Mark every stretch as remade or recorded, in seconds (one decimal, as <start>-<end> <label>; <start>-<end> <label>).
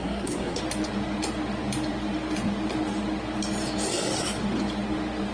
0.0-0.6 remade; 0.6-5.3 recorded